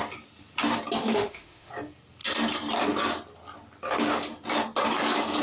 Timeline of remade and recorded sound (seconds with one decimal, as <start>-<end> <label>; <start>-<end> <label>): 0.0-1.0 recorded; 1.0-1.7 remade; 1.7-5.4 recorded